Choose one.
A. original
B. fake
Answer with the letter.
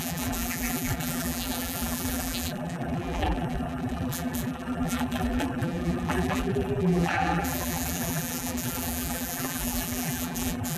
B